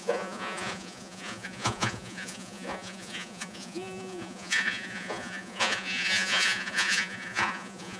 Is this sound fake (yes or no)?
yes